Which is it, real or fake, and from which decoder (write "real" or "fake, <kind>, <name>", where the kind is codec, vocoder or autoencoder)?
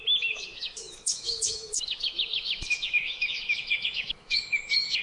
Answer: fake, autoencoder, DAC-VAE